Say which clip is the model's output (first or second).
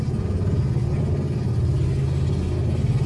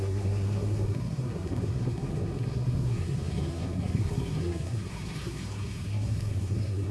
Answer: second